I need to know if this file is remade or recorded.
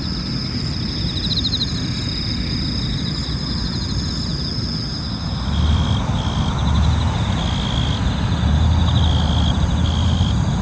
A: recorded